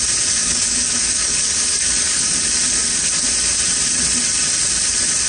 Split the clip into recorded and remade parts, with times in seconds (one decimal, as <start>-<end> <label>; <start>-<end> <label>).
0.0-0.4 recorded; 0.4-2.3 remade; 2.3-5.3 recorded